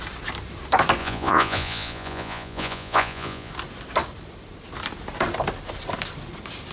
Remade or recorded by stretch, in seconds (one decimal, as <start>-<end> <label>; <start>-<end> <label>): 0.0-1.0 recorded; 1.0-3.5 remade; 3.5-6.7 recorded

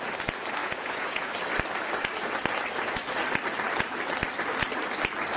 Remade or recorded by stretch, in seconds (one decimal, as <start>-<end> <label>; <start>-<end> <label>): 0.0-0.6 recorded; 0.6-1.3 remade; 1.3-5.4 recorded

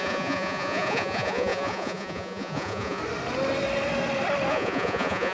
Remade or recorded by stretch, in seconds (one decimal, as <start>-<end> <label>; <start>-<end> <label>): 0.0-3.0 remade; 3.0-4.5 recorded; 4.5-5.3 remade